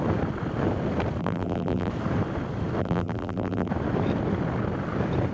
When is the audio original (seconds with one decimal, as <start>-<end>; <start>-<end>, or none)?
0.0-1.2; 1.9-2.8; 3.7-5.3